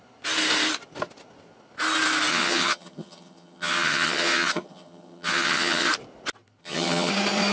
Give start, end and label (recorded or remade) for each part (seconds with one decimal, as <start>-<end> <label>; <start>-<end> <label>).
0.0-2.3 recorded; 2.3-5.9 remade; 5.9-6.6 recorded; 6.6-7.1 remade; 7.1-7.5 recorded